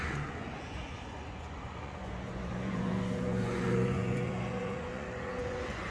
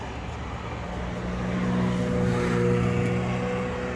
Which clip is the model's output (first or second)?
first